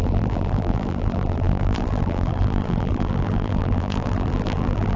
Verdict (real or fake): fake